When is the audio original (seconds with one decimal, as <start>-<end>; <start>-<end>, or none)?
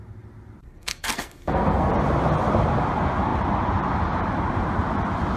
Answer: 0.0-0.6; 1.9-5.4